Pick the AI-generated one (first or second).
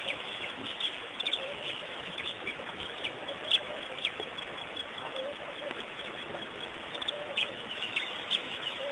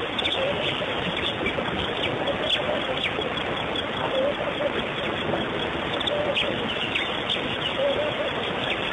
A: first